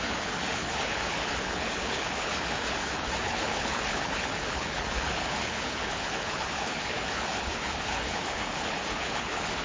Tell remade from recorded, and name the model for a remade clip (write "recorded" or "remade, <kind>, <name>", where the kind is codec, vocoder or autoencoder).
remade, codec, HILCodec